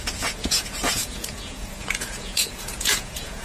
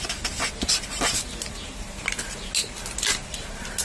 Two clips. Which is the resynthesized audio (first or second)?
first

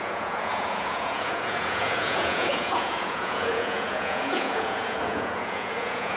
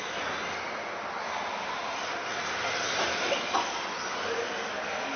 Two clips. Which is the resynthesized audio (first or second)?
first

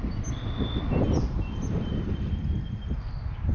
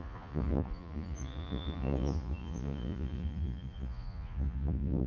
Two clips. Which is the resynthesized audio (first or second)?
second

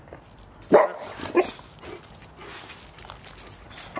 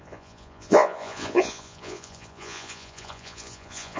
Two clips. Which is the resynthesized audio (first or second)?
second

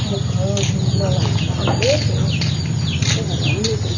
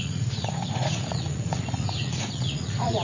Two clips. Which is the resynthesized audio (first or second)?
second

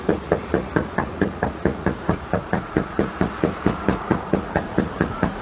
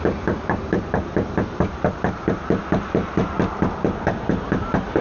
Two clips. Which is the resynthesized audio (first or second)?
first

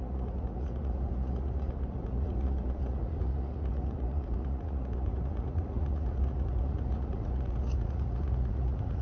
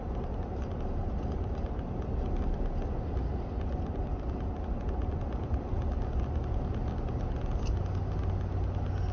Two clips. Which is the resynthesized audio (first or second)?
first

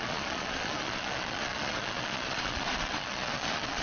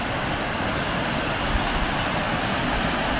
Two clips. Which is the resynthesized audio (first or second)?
first